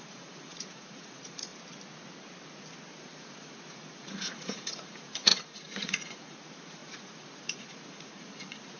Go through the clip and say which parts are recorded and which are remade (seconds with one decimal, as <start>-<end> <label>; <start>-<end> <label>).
0.0-1.5 remade; 1.5-2.9 recorded; 2.9-8.8 remade